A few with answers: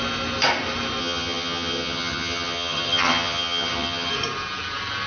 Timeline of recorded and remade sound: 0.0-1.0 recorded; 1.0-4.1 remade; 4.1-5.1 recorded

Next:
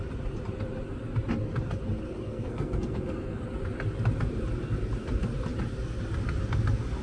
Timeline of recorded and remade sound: 0.0-2.3 recorded; 2.3-3.4 remade; 3.4-7.0 recorded

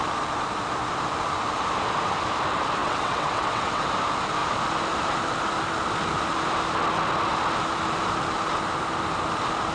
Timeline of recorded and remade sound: 0.0-2.8 recorded; 2.8-3.8 remade; 3.8-9.7 recorded

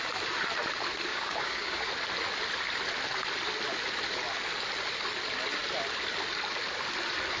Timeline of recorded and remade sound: 0.0-1.1 recorded; 1.1-1.9 remade; 1.9-7.4 recorded

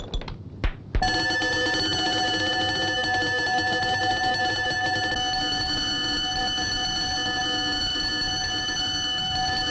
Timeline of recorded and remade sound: 0.0-9.7 recorded

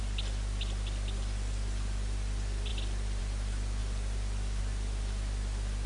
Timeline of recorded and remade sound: 0.0-5.9 recorded

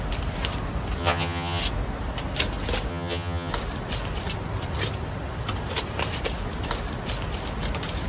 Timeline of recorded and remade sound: 0.0-1.0 recorded; 1.0-1.6 remade; 1.6-2.9 recorded; 2.9-3.5 remade; 3.5-8.1 recorded